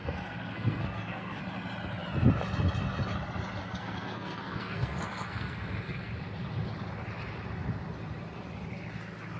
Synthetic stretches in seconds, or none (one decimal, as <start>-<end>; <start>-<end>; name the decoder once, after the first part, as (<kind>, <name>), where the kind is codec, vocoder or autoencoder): 0.0-1.4 (codec, SNAC); 3.6-6.1